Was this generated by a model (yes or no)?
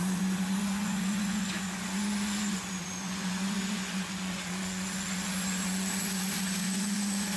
yes